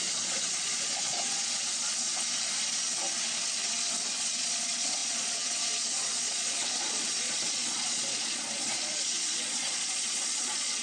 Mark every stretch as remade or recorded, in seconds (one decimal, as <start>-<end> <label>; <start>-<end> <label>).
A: 0.0-2.1 remade; 2.1-4.2 recorded; 4.2-10.8 remade